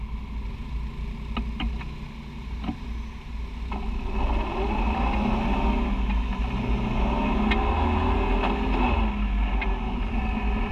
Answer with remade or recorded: recorded